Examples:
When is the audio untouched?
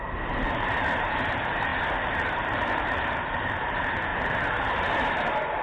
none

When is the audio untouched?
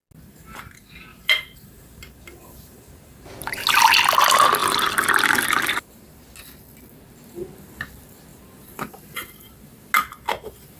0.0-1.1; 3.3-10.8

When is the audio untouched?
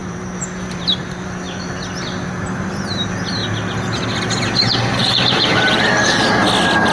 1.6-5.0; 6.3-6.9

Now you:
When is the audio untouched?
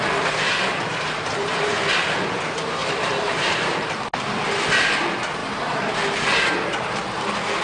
0.0-0.9; 1.7-2.8; 3.7-7.6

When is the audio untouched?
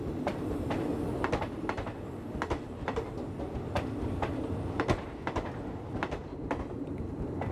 0.0-6.2